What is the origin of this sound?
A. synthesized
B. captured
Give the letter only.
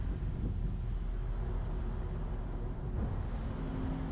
B